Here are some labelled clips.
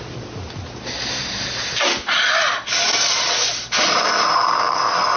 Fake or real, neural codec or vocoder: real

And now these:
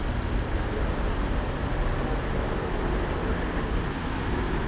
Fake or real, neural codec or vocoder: real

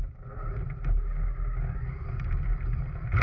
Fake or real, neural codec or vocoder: real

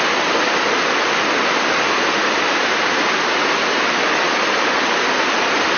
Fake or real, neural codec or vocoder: real